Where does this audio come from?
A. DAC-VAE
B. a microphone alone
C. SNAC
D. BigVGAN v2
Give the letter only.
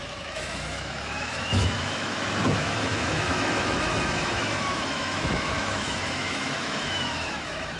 A